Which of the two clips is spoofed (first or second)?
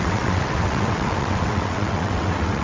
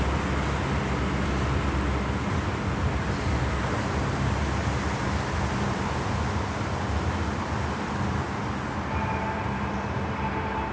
first